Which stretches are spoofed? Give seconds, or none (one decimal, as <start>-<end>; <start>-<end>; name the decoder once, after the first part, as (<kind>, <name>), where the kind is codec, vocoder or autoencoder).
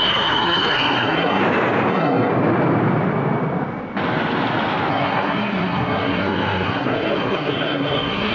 0.0-1.4 (codec, SNAC); 1.9-2.3; 4.9-8.3